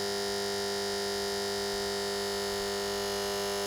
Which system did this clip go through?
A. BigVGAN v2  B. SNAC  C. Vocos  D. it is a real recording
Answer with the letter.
D